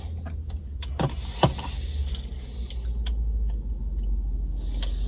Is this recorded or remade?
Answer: recorded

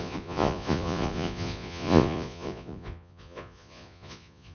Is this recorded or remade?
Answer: remade